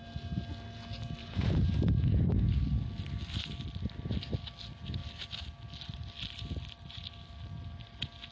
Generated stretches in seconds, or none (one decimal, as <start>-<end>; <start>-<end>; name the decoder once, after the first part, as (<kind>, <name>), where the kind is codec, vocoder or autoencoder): 1.2-2.2 (vocoder, Vocos)